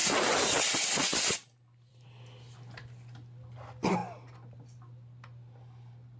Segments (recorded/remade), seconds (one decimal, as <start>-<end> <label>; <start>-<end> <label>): 0.0-6.2 recorded